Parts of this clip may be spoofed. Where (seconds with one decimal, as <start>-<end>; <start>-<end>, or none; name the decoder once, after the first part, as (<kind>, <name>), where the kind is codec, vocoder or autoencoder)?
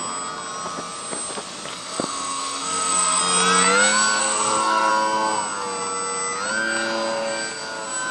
1.7-3.2 (codec, SNAC); 4.2-4.9